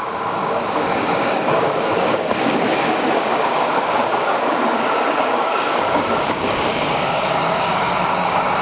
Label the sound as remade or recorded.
remade